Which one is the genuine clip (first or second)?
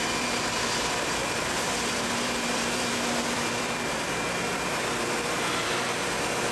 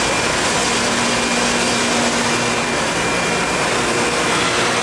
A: second